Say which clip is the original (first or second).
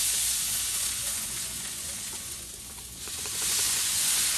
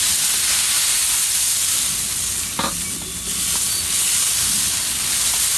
second